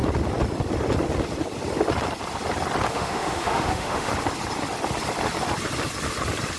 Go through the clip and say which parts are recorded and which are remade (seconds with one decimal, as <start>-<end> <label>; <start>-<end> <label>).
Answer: 0.0-2.9 recorded; 2.9-4.1 remade; 4.1-6.6 recorded